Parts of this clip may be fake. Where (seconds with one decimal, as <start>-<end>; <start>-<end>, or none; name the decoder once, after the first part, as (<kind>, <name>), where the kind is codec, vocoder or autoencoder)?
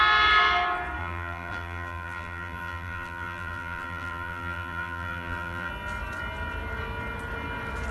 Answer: 1.0-5.7 (vocoder, BigVGAN v2)